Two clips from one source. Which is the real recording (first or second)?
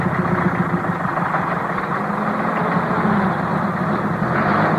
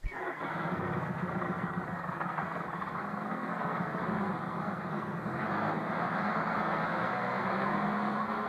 first